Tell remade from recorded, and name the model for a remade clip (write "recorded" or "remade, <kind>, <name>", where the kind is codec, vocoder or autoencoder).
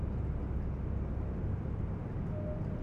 recorded